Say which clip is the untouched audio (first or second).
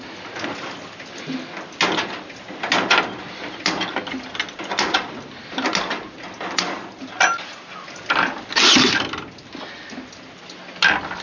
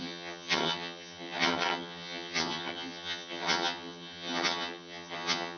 first